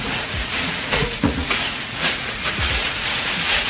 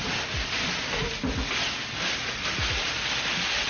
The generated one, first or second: first